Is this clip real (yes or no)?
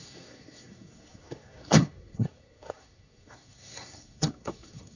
no